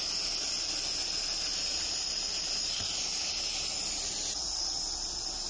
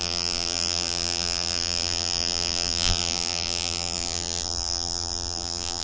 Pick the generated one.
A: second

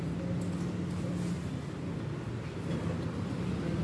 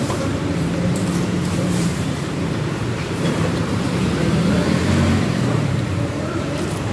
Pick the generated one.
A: second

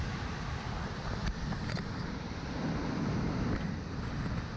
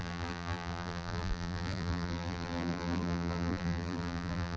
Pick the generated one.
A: second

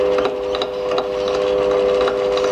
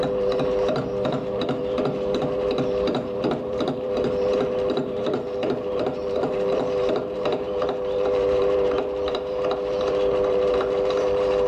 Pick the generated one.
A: second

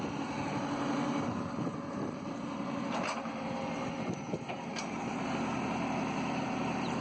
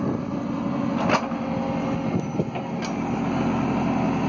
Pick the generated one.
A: first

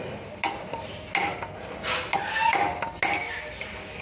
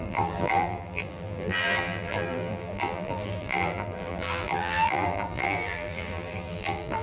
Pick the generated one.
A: second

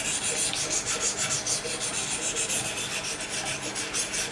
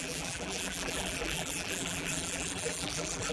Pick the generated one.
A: second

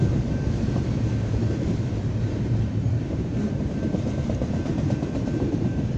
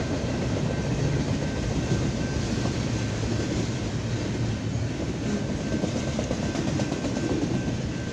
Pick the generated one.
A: first